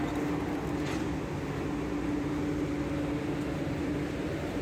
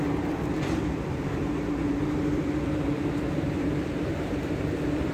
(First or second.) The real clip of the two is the first